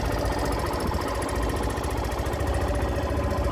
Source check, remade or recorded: recorded